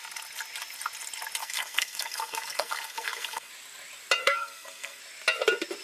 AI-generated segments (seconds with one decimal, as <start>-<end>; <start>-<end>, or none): 1.4-3.5; 4.2-5.0